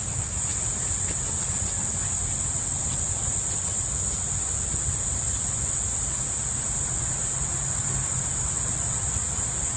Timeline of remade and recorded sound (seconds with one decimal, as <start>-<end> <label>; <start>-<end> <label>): 0.0-9.8 recorded